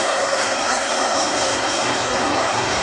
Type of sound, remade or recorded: remade